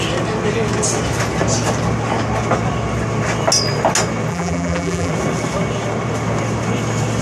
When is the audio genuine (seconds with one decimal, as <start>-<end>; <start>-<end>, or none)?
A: 0.0-4.3; 5.1-7.2